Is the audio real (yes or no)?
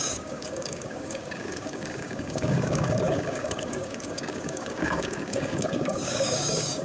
no